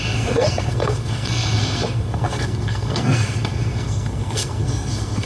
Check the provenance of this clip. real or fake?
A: fake